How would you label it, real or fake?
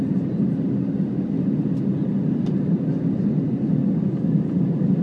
real